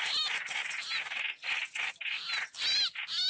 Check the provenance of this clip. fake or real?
real